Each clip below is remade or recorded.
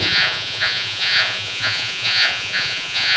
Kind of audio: remade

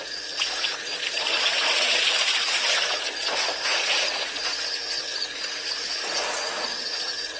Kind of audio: remade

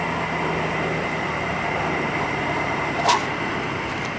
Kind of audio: recorded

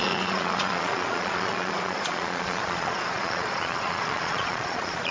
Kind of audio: remade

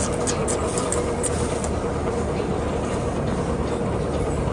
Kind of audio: recorded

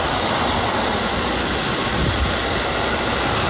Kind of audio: recorded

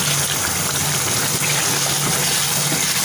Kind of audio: recorded